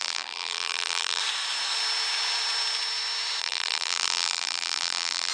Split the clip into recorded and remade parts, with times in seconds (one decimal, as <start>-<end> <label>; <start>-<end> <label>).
0.0-1.2 remade; 1.2-3.4 recorded; 3.4-5.3 remade